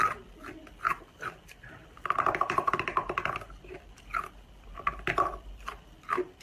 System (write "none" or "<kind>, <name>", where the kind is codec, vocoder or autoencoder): none